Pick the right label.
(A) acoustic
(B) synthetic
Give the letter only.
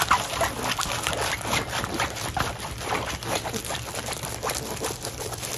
B